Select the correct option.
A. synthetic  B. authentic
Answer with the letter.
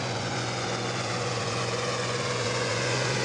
A